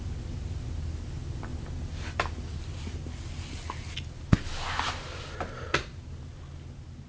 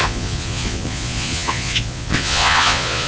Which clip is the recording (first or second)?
first